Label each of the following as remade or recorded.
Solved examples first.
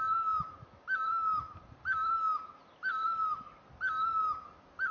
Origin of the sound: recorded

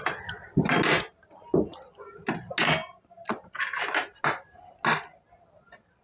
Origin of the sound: recorded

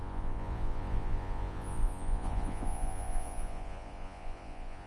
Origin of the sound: remade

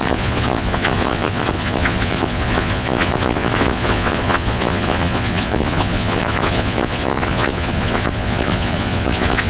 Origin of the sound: remade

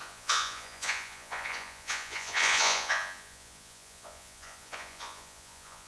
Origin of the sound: remade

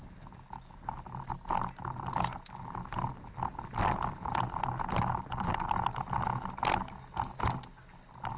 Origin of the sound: recorded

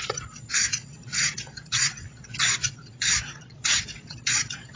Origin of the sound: remade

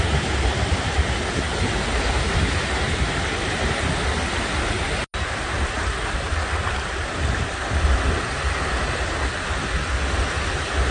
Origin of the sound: recorded